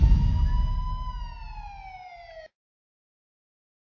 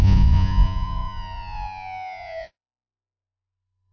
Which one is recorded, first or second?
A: first